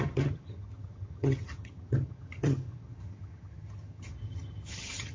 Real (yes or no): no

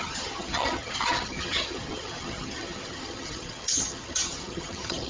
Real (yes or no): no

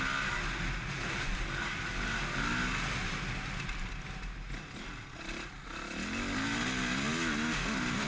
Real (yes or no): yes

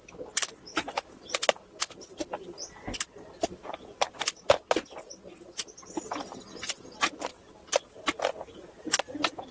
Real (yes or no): yes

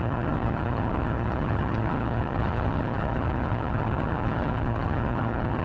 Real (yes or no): no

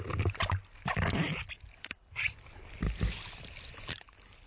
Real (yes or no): yes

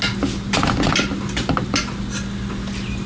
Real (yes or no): yes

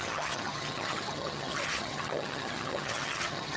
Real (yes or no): no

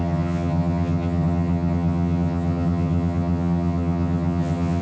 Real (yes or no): no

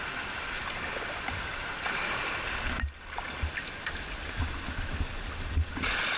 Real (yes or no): yes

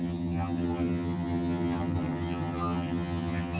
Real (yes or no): no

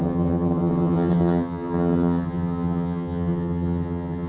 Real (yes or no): no